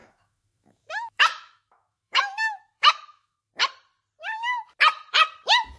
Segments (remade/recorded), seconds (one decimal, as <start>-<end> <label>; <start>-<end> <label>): 0.0-3.5 remade; 3.5-5.8 recorded